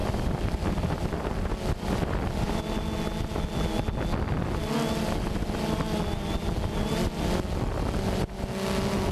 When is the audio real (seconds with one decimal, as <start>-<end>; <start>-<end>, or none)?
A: 2.6-9.1